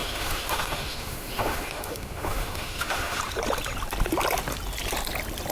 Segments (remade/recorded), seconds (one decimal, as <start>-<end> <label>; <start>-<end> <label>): 0.0-3.2 remade; 3.2-5.5 recorded